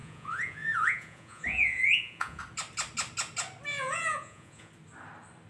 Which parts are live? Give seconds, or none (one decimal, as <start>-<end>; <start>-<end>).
2.4-3.7; 4.7-5.5